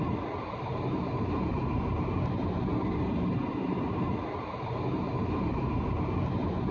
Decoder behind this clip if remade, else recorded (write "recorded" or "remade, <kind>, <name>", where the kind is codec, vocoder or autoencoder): remade, vocoder, BigVGAN v2